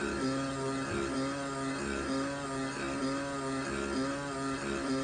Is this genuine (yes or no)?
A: yes